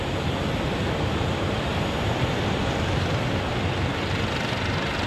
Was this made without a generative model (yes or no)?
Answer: yes